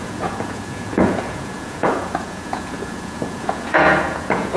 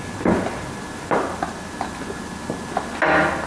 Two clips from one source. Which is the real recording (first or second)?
second